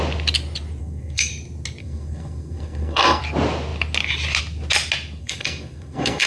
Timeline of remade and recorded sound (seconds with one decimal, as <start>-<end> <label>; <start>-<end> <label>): 0.0-0.8 recorded; 0.8-1.3 remade; 1.3-1.8 recorded; 1.8-3.2 remade; 3.2-5.2 recorded; 5.2-6.3 remade